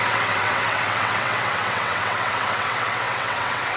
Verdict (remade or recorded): remade